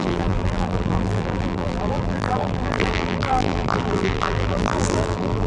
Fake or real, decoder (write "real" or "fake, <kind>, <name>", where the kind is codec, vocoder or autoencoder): fake, vocoder, BigVGAN v2